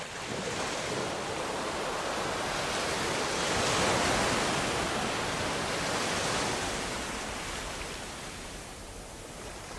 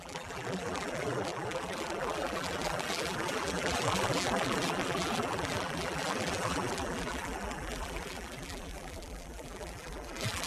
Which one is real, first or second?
first